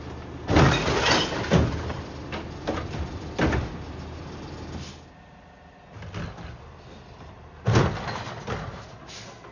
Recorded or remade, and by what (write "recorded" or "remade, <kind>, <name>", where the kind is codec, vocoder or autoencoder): recorded